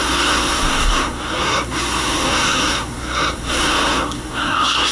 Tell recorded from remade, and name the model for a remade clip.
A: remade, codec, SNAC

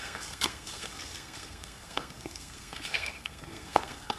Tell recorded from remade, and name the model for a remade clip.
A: remade, codec, SNAC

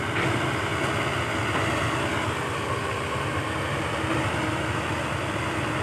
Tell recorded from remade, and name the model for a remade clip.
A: recorded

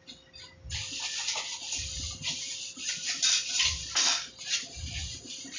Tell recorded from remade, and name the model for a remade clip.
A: recorded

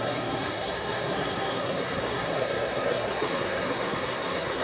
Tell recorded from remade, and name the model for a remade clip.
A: remade, codec, SNAC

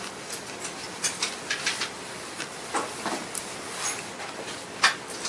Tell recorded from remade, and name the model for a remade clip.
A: recorded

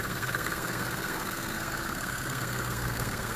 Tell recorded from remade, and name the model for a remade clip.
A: remade, codec, SNAC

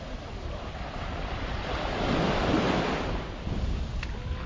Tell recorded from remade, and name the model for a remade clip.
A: recorded